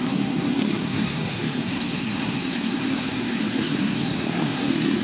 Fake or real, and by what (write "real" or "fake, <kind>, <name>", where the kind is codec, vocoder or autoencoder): fake, codec, SNAC